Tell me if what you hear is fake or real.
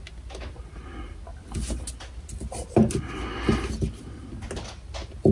real